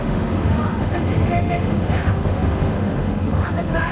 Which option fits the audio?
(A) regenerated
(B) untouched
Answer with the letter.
A